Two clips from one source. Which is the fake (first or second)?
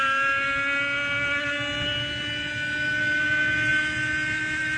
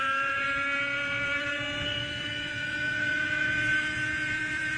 second